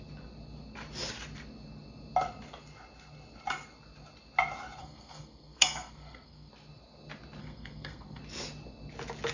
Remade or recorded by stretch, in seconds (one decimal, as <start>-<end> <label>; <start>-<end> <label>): 0.0-4.8 recorded; 4.8-6.5 remade; 6.5-7.4 recorded; 7.4-8.2 remade; 8.2-9.3 recorded